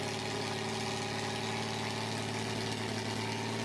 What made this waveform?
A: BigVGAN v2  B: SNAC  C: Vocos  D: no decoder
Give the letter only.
D